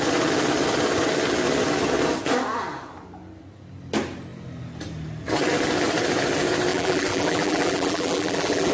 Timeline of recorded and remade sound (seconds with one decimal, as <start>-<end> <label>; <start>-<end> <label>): 0.0-6.7 recorded; 6.7-8.7 remade